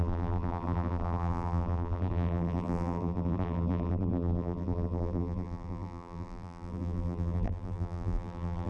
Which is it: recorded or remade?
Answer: remade